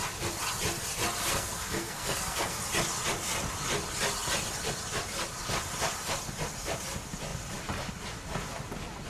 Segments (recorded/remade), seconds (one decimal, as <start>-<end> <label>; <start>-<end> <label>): 0.0-1.3 recorded; 1.3-2.6 remade; 2.6-9.1 recorded